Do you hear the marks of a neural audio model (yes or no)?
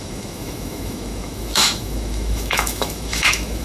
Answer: yes